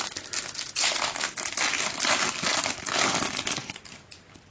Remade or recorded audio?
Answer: recorded